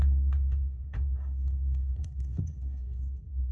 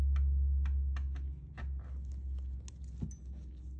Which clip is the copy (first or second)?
first